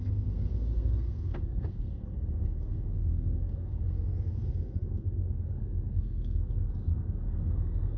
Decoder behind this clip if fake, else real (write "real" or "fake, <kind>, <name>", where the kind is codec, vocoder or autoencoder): fake, codec, SNAC